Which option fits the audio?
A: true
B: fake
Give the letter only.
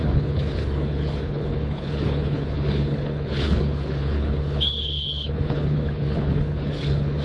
B